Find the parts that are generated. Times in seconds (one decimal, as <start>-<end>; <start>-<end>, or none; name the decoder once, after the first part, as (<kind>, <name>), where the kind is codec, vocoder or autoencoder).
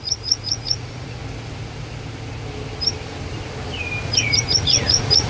0.0-1.2 (vocoder, Vocos); 4.4-5.3